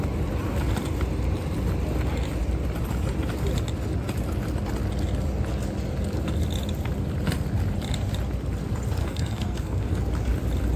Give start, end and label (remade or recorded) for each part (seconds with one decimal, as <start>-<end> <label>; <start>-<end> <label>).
0.0-9.0 recorded; 9.0-10.0 remade; 10.0-10.8 recorded